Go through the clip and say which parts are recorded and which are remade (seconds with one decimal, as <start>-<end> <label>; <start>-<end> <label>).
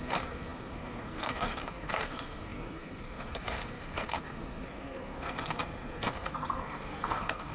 0.0-7.5 remade